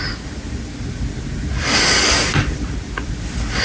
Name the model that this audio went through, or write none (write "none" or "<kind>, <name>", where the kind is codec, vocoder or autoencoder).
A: none